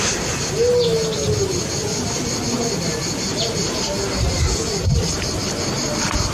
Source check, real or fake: real